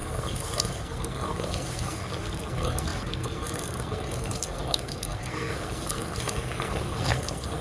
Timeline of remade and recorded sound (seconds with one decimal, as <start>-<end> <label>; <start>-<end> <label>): 0.0-7.6 remade